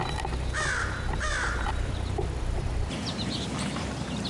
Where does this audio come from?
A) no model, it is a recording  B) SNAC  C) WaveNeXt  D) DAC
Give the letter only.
A